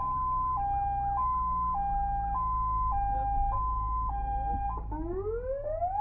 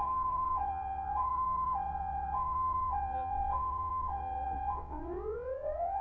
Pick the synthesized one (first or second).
second